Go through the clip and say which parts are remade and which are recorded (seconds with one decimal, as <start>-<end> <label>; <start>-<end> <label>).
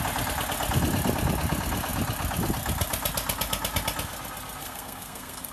0.0-4.6 recorded; 4.6-5.5 remade